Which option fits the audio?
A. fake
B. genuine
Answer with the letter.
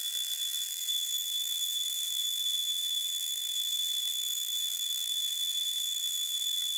A